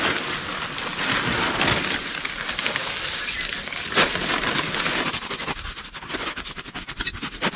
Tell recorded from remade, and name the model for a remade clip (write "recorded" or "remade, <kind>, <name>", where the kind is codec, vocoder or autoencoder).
recorded